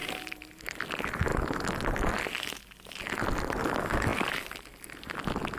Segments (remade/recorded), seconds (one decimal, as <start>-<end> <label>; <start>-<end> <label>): 0.0-0.7 remade; 0.7-5.6 recorded